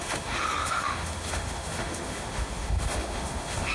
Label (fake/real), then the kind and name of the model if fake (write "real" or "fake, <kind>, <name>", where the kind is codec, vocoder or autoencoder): fake, autoencoder, DAC-VAE